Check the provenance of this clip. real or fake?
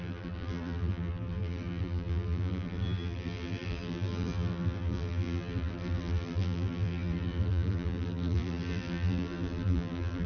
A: fake